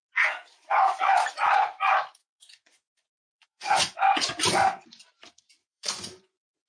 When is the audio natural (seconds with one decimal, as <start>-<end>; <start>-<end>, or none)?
0.0-2.2; 4.3-5.6